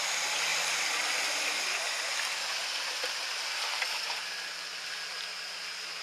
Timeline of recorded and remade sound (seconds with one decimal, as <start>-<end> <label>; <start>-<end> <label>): 0.0-0.5 recorded; 0.5-1.2 remade; 1.2-6.0 recorded